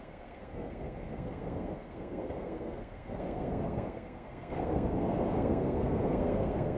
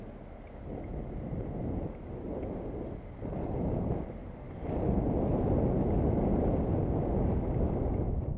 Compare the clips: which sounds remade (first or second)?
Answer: first